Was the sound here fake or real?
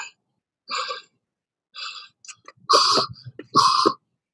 real